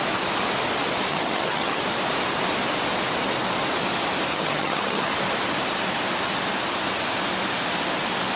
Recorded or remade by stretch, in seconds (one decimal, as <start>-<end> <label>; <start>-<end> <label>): 0.0-1.1 recorded; 1.1-1.8 remade; 1.8-4.3 recorded; 4.3-5.1 remade; 5.1-8.4 recorded